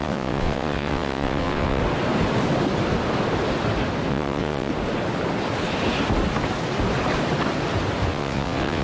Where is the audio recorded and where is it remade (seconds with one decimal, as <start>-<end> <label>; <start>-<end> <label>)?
0.0-1.8 remade; 1.8-4.1 recorded; 4.1-4.7 remade; 4.7-8.1 recorded; 8.1-8.8 remade